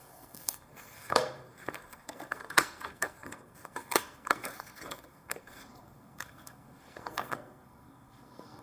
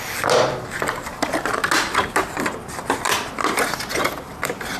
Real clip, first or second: second